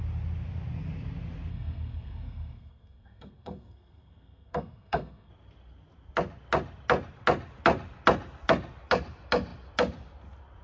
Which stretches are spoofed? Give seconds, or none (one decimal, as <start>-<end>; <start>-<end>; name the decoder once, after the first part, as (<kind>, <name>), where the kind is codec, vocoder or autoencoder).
1.5-5.3 (codec, SNAC)